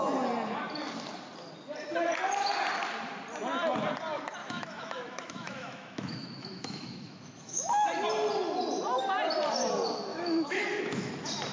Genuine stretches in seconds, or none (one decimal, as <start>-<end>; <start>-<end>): 0.0-4.4; 7.7-10.1; 11.1-11.5